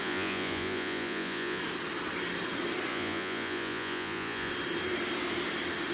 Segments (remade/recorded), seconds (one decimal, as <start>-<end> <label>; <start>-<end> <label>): 0.0-1.6 remade; 1.6-2.9 recorded; 2.9-4.5 remade; 4.5-5.9 recorded